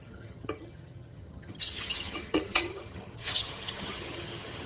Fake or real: fake